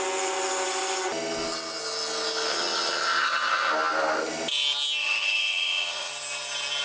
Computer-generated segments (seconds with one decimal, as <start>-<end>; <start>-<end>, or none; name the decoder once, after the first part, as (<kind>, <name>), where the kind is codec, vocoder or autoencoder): 2.5-3.7 (vocoder, HiFi-GAN); 5.0-6.1

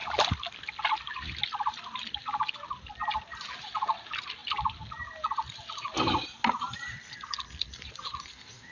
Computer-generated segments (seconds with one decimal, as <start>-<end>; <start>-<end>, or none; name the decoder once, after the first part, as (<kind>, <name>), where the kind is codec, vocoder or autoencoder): none

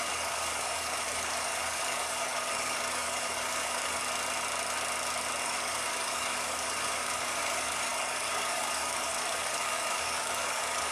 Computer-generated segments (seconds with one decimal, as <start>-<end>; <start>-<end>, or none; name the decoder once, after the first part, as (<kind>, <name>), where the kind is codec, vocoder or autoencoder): 0.0-4.0 (codec, DAC); 5.4-10.9

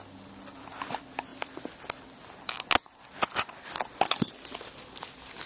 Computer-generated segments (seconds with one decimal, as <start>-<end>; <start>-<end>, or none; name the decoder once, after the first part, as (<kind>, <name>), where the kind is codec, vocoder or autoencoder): none

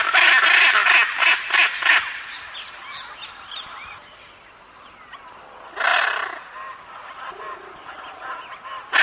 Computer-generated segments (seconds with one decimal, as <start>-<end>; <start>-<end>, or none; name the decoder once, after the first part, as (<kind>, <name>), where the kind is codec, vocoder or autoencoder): none

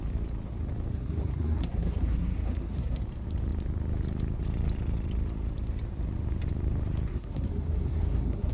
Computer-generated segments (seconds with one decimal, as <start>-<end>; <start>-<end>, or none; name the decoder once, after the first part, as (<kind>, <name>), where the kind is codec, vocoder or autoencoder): 0.9-3.0 (codec, SNAC); 7.1-8.5